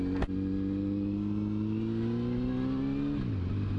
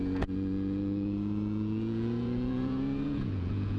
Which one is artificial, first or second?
second